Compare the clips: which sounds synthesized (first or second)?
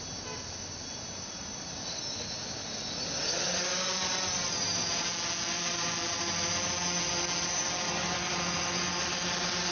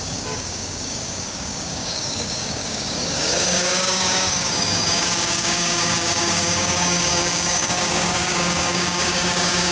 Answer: second